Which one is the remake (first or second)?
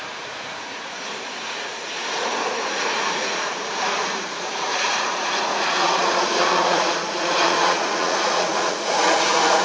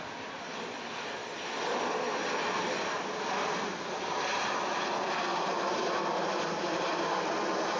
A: first